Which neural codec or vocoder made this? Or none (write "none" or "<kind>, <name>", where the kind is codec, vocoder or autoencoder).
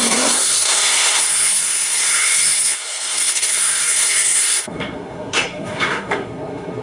codec, SNAC